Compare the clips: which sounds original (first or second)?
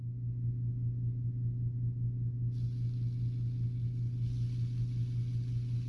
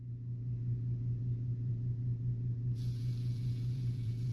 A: first